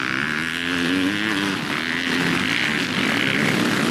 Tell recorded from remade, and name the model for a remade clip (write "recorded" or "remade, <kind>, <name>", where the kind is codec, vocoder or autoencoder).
recorded